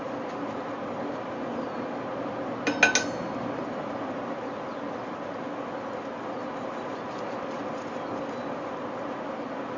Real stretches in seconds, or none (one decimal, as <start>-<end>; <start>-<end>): 0.0-9.8